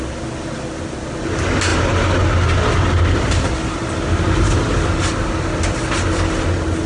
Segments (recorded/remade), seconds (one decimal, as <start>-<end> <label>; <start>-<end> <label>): 0.0-6.9 recorded